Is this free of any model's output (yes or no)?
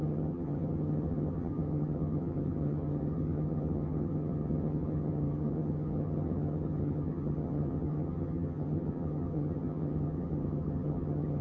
no